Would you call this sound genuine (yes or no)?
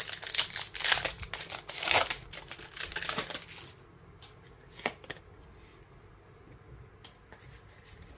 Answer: yes